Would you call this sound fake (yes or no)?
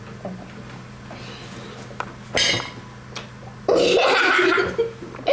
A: no